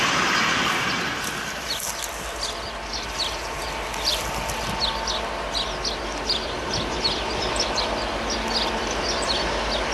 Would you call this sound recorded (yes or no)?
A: yes